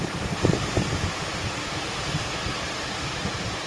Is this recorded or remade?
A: remade